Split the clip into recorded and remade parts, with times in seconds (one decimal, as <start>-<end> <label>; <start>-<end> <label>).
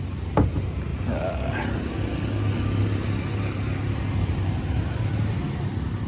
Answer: 0.0-6.1 recorded